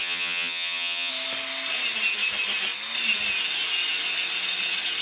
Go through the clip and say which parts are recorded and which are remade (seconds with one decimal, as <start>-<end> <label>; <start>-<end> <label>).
0.0-1.1 remade; 1.1-5.0 recorded